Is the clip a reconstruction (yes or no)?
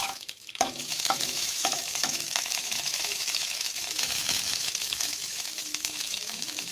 yes